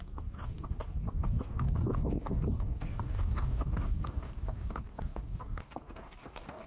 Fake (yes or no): yes